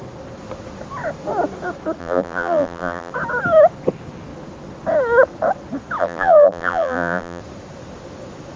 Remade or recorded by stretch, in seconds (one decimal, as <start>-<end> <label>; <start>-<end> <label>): 0.0-2.0 recorded; 2.0-3.1 remade; 3.1-6.0 recorded; 6.0-7.4 remade; 7.4-8.6 recorded